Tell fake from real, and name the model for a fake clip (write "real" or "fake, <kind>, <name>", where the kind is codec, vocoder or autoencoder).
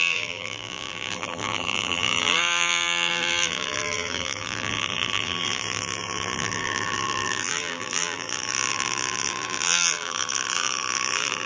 fake, vocoder, BigVGAN v2